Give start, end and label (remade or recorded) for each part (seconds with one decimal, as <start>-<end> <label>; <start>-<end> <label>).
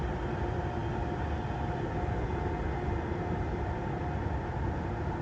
0.0-5.2 recorded